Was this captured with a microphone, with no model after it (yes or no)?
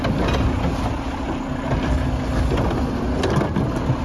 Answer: yes